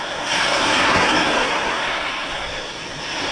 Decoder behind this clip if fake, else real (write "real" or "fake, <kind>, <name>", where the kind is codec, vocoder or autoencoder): fake, codec, SNAC